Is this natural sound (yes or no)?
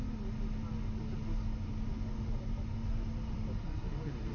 yes